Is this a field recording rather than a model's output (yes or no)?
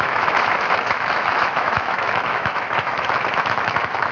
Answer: no